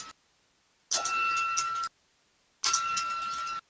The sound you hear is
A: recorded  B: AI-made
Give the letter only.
A